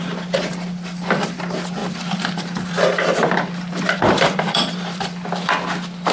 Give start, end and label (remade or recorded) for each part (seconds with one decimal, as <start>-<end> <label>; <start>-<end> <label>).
0.0-1.8 recorded; 1.8-5.5 remade; 5.5-6.1 recorded